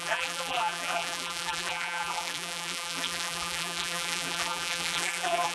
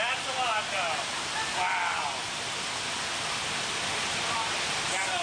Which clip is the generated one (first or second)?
first